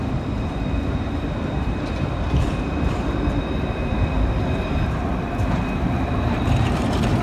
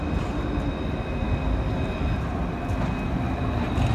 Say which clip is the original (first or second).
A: second